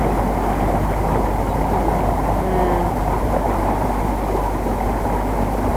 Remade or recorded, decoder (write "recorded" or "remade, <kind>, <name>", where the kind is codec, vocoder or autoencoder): recorded